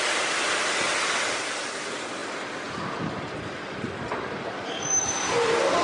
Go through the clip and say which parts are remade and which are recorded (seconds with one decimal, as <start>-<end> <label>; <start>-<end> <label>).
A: 0.0-5.8 recorded